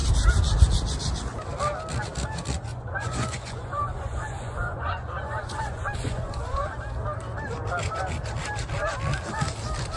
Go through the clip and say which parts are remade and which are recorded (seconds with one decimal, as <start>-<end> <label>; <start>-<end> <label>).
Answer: 0.0-2.7 recorded; 2.7-6.8 remade; 6.8-10.0 recorded